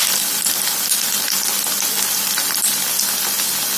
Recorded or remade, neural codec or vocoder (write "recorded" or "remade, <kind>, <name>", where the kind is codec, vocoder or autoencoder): recorded